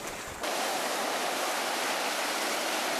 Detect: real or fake fake